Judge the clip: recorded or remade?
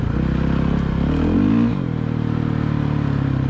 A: recorded